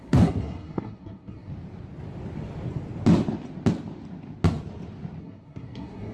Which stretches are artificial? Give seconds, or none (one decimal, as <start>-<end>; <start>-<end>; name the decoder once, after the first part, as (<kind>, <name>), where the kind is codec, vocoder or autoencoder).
0.0-1.5 (codec, SNAC); 5.2-6.1